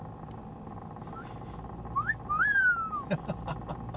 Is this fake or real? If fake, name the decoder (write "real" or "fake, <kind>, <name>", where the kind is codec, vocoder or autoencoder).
real